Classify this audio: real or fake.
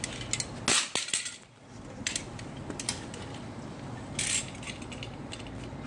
real